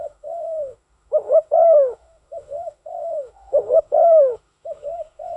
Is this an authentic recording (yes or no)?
no